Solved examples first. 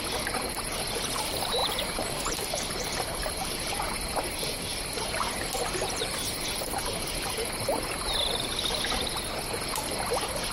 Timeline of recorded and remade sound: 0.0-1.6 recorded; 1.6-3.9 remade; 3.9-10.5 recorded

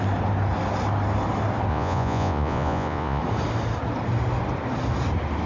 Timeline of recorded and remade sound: 0.0-1.7 recorded; 1.7-3.2 remade; 3.2-5.5 recorded

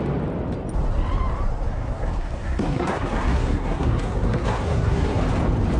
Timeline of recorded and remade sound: 0.0-1.7 recorded; 1.7-5.2 remade; 5.2-5.8 recorded

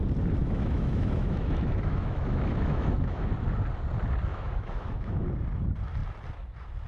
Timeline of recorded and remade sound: 0.0-0.4 recorded; 0.4-3.3 remade; 3.3-4.3 recorded; 4.3-5.3 remade; 5.3-6.9 recorded

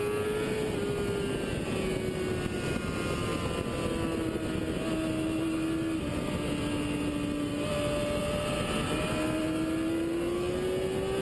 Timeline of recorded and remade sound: 0.0-11.2 recorded

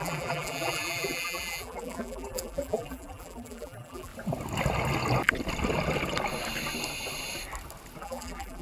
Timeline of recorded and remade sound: 0.0-4.1 remade; 4.1-8.0 recorded; 8.0-8.6 remade

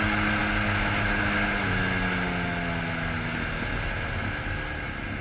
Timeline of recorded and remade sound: 0.0-5.2 recorded